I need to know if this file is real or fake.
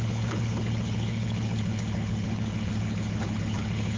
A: fake